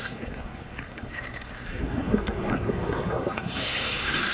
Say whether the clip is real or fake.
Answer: fake